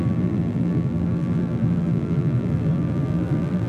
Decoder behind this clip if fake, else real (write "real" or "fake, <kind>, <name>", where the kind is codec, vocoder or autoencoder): fake, vocoder, BigVGAN v2